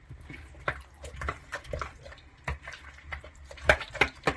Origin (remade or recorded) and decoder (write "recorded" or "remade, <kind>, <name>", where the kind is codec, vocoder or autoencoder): remade, vocoder, BigVGAN v2